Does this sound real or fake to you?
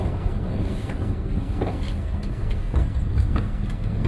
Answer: fake